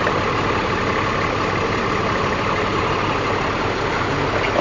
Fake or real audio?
real